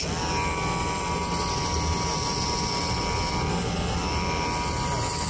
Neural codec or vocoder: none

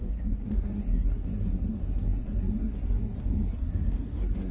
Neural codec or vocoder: codec, SNAC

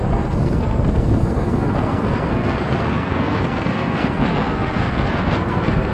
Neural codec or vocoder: codec, SNAC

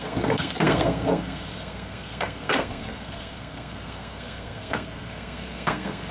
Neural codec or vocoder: codec, SNAC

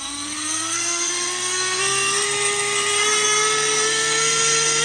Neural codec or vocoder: codec, SNAC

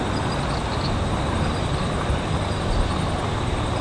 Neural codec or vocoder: none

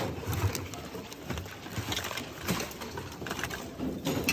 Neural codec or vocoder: none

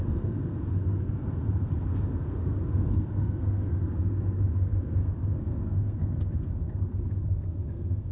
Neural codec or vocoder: codec, SNAC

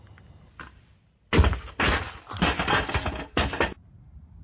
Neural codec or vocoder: none